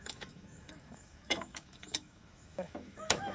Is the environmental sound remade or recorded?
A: remade